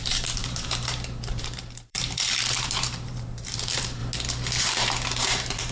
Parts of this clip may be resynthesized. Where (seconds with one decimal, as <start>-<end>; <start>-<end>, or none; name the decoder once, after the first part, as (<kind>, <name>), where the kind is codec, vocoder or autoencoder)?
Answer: 0.0-4.0 (vocoder, BigVGAN v2); 4.6-5.7